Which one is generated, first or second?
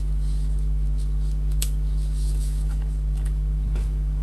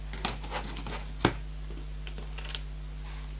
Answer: first